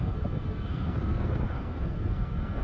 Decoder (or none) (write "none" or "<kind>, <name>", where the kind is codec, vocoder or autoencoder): codec, SNAC